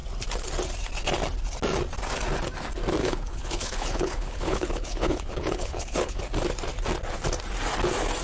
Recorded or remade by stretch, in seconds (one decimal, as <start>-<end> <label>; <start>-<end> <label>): 0.0-3.0 recorded; 3.0-6.2 remade; 6.2-8.2 recorded